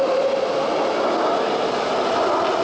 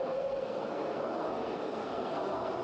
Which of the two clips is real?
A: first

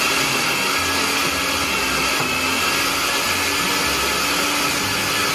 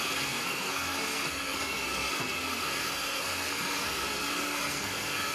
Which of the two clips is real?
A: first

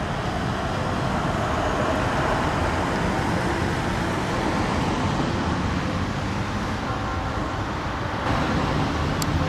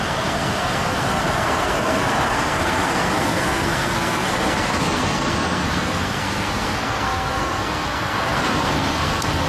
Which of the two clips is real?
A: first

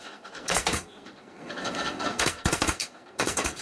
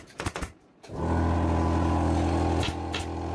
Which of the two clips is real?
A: second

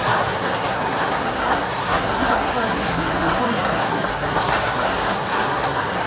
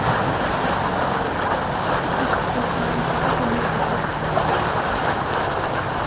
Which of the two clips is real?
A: second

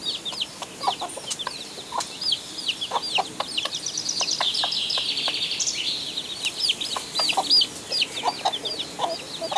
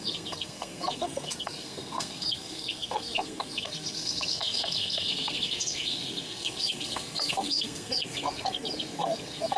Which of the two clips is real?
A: first